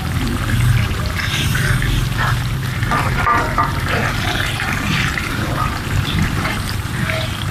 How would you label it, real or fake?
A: fake